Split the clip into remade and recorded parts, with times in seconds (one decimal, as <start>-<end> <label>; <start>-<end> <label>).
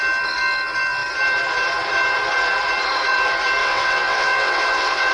0.0-3.6 recorded; 3.6-5.1 remade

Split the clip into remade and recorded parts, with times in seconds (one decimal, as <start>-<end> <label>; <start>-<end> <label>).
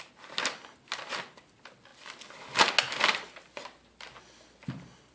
0.0-5.1 recorded